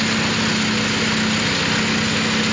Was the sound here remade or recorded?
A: recorded